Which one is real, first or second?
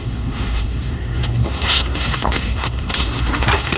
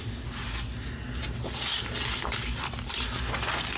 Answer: second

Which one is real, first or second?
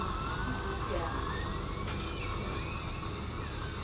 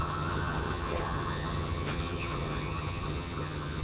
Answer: first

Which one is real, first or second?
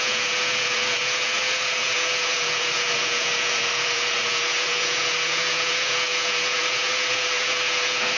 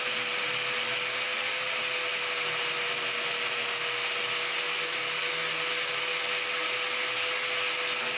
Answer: second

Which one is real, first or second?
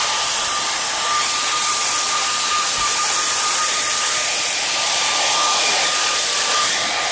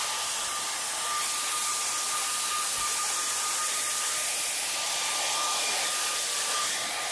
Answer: second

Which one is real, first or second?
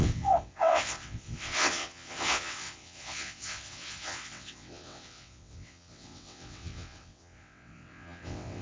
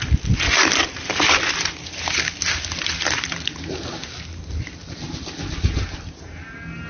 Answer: second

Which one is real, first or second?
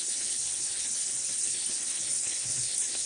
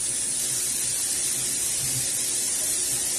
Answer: second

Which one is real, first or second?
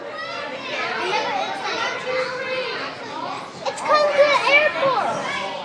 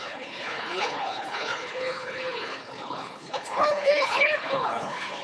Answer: first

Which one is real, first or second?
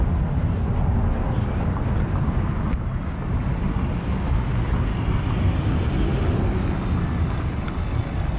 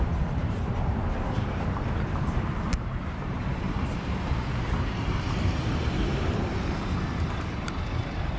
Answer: first